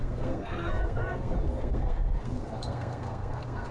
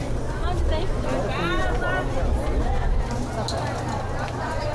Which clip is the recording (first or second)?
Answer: second